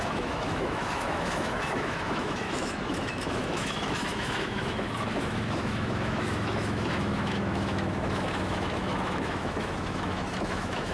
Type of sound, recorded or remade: remade